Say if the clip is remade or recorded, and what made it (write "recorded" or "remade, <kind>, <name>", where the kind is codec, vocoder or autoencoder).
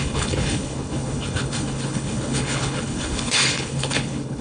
remade, codec, HILCodec